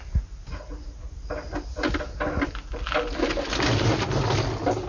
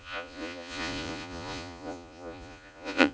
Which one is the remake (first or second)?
second